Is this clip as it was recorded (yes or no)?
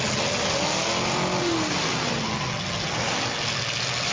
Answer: yes